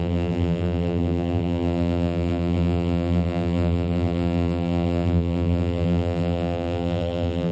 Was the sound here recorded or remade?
remade